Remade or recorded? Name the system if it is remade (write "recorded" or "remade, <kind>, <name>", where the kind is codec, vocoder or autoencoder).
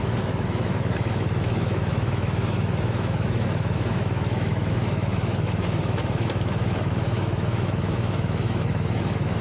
remade, autoencoder, DAC-VAE